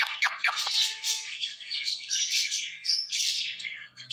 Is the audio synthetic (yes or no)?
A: yes